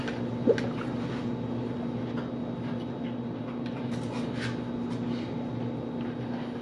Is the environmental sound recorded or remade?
recorded